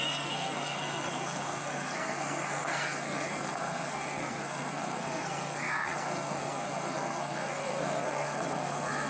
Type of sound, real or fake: fake